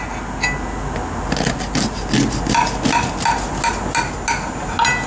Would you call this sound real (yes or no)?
yes